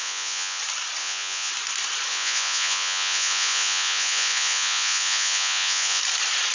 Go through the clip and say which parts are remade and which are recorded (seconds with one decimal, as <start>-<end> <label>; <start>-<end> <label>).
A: 0.0-0.6 remade; 0.6-1.0 recorded; 1.0-1.5 remade; 1.5-2.1 recorded; 2.1-6.0 remade; 6.0-6.5 recorded